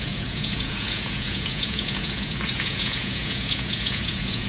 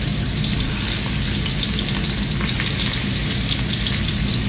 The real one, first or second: second